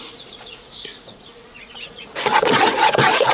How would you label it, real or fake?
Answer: fake